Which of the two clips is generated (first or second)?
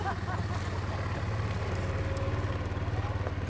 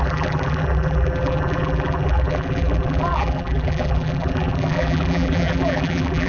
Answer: second